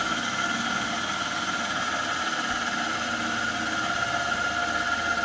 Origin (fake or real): real